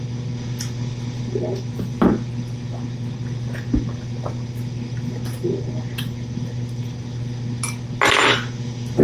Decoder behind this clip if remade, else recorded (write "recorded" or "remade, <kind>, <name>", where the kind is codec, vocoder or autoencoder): recorded